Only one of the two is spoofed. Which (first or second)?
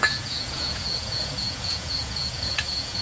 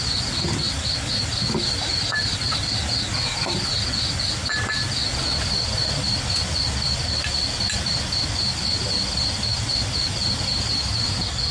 first